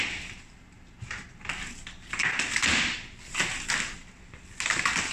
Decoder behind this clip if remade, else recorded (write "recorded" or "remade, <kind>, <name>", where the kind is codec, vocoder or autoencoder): recorded